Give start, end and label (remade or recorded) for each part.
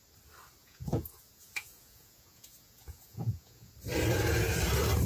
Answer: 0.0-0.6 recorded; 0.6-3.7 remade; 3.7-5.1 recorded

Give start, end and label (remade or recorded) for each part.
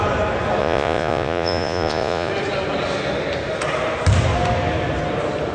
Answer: 0.0-0.6 recorded; 0.6-2.3 remade; 2.3-5.5 recorded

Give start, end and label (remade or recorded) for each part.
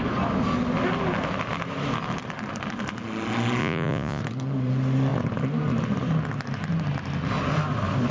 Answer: 0.0-3.6 recorded; 3.6-4.2 remade; 4.2-8.1 recorded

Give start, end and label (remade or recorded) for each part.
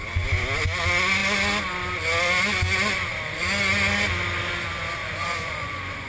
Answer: 0.0-5.0 recorded; 5.0-6.1 remade